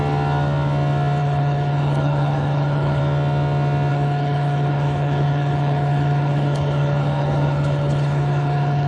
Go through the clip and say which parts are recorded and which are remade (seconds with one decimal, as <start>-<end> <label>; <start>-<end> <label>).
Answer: 0.0-1.2 recorded; 1.2-3.0 remade; 3.0-3.9 recorded; 3.9-8.9 remade